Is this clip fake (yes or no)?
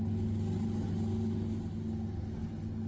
no